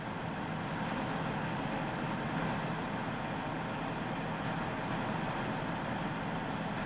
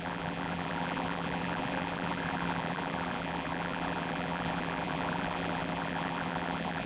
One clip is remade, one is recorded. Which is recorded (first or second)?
first